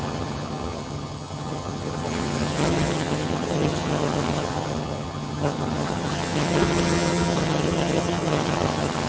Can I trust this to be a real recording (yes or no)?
no